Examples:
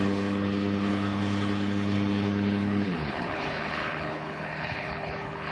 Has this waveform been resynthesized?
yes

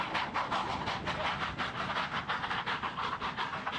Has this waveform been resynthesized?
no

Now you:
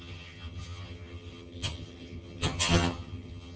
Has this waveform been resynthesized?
yes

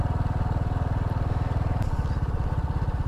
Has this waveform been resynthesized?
no